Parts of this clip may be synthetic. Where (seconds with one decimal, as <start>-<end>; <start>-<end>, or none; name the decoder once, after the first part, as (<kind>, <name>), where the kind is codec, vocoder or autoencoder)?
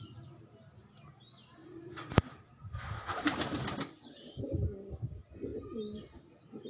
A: 1.6-4.4 (vocoder, BigVGAN v2)